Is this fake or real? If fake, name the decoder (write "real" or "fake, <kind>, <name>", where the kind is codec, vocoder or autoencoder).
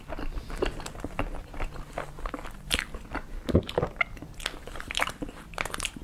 real